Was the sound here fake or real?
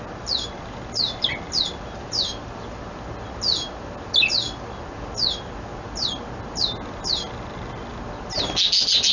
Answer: real